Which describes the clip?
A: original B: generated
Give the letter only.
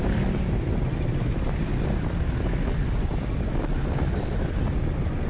A